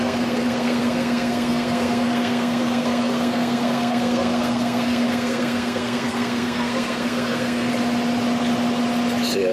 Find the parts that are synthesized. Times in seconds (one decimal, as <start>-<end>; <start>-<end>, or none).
0.0-7.7